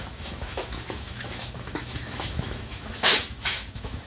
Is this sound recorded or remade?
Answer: remade